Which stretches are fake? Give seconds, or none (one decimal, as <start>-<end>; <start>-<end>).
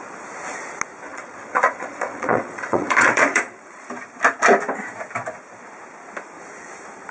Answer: 1.1-3.9